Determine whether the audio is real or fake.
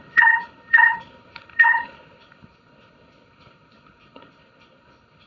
fake